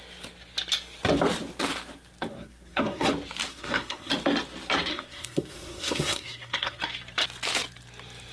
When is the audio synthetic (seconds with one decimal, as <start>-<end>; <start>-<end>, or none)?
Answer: 2.3-3.1; 3.5-4.1; 4.9-6.8